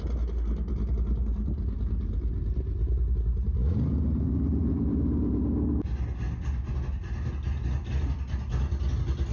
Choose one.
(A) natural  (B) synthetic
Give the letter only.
A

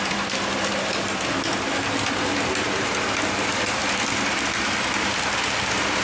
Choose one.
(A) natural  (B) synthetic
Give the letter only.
A